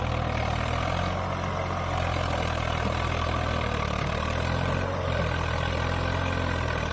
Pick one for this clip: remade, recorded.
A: recorded